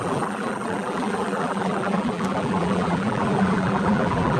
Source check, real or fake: fake